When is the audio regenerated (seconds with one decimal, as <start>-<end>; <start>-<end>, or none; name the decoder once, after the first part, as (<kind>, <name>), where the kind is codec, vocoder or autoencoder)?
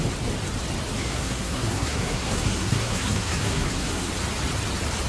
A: 1.0-4.1 (codec, SNAC)